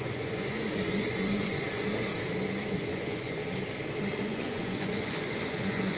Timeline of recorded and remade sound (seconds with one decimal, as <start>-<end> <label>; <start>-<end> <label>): 0.0-2.1 remade; 2.1-2.7 recorded; 2.7-3.4 remade; 3.4-4.2 recorded; 4.2-6.0 remade